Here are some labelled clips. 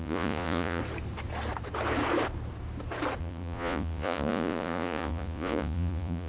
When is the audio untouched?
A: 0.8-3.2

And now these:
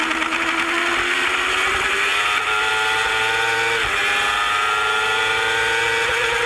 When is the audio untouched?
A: 0.0-6.5

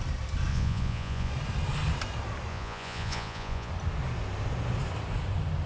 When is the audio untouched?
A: 0.0-0.5; 1.3-2.5; 3.7-5.7

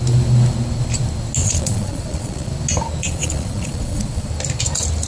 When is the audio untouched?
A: 0.0-1.4; 2.5-3.0; 4.3-5.1